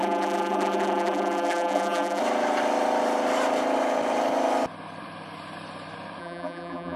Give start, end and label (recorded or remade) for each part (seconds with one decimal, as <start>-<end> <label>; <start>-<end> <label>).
0.0-2.2 remade; 2.2-6.2 recorded; 6.2-7.0 remade